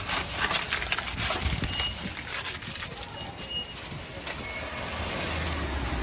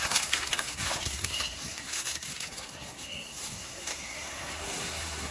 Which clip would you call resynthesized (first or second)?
second